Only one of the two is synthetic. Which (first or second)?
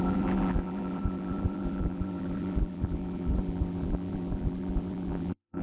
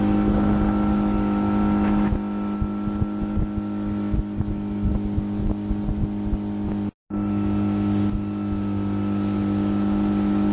first